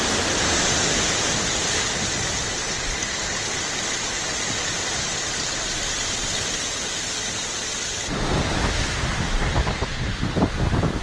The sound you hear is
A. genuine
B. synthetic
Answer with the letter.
A